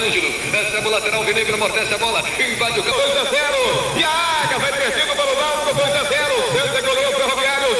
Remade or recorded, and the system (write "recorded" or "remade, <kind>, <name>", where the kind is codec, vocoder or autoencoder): remade, autoencoder, DAC-VAE